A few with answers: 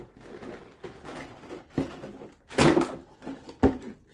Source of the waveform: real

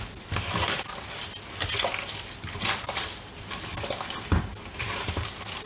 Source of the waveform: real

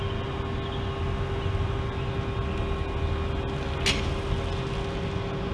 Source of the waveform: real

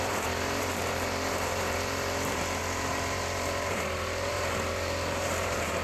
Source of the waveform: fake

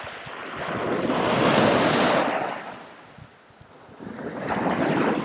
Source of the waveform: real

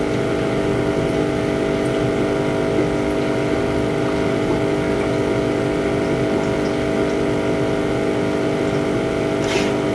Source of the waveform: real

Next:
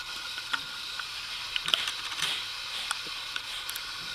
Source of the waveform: real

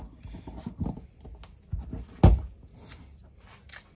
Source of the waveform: real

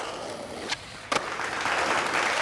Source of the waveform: real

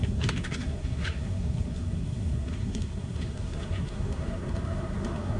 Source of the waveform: fake